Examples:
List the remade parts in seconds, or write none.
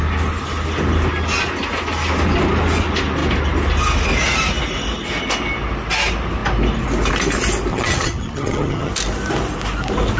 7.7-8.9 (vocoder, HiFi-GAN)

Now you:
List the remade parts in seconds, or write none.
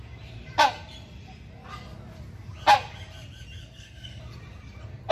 3.6-4.2 (codec, SNAC)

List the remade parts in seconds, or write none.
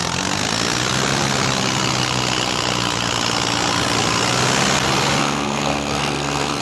5.2-6.6 (codec, SNAC)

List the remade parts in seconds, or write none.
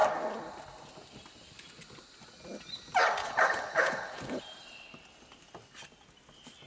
3.2-4.4 (codec, HILCodec)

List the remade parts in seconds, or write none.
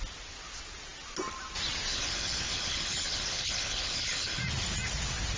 1.9-4.4 (codec, HILCodec)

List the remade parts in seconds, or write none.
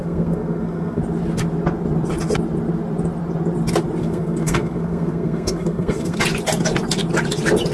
0.0-1.0 (codec, SNAC); 4.0-6.2